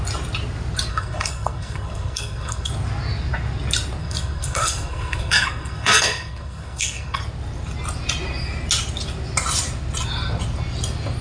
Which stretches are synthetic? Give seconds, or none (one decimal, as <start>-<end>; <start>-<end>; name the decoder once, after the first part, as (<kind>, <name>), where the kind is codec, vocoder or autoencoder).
0.9-2.7 (codec, SNAC); 4.0-7.2